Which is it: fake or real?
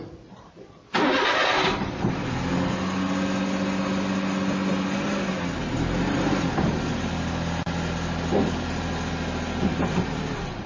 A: real